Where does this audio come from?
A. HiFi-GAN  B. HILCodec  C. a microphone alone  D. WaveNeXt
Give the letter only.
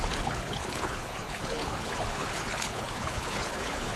B